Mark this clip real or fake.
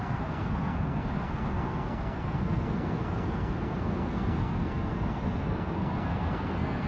fake